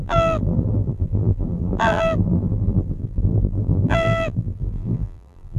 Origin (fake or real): fake